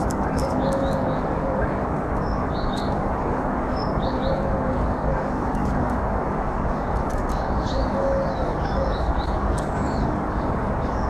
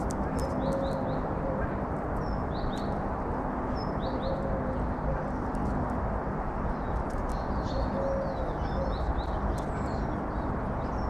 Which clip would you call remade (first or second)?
first